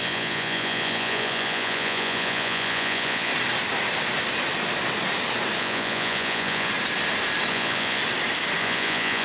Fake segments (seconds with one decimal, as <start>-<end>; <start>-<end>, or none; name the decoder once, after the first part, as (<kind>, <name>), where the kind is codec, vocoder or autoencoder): 0.0-3.3 (vocoder, Vocos); 5.6-6.7; 7.5-8.0; 8.6-9.2